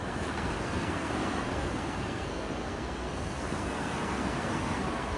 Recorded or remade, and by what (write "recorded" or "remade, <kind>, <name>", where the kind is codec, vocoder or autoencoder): remade, codec, SNAC